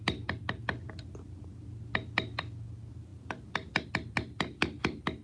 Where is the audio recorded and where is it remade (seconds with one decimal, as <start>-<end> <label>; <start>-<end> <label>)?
0.0-5.2 recorded